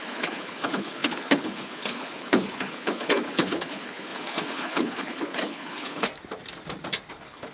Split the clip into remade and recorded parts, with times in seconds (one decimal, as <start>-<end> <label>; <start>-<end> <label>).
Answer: 0.0-6.1 remade; 6.1-7.1 recorded; 7.1-7.5 remade